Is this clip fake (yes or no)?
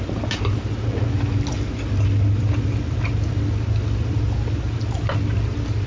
no